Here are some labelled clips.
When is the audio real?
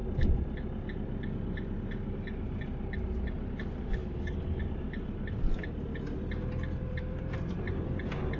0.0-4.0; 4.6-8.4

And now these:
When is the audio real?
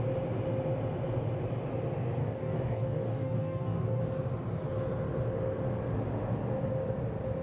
0.0-2.2; 4.0-7.4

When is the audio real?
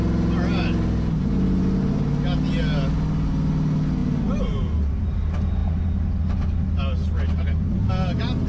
0.0-8.5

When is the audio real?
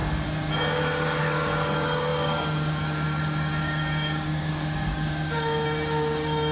0.0-0.8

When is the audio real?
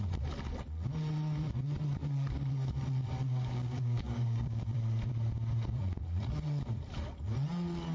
0.0-3.2; 4.7-7.9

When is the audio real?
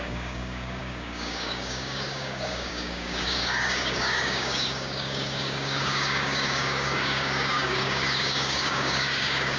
none